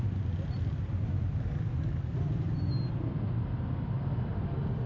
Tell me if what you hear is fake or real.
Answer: real